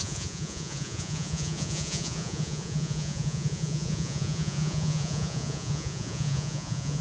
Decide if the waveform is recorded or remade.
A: remade